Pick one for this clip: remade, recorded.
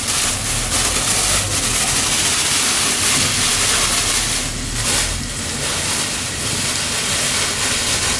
recorded